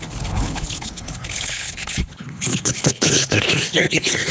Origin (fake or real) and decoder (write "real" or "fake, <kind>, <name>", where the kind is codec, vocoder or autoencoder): fake, codec, HILCodec